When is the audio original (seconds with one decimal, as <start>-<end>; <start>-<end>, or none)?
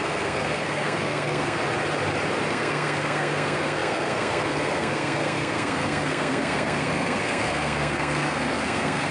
1.6-2.5